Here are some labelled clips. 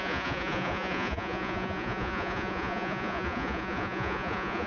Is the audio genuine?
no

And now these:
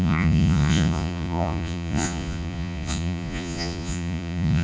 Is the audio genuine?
no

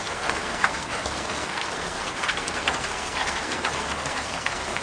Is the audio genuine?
no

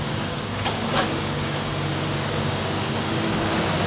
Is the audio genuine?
no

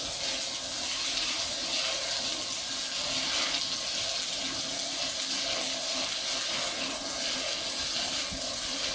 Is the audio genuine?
yes